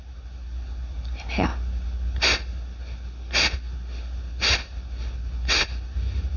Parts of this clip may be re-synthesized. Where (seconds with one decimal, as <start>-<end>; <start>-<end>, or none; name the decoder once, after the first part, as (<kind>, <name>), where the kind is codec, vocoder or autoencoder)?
none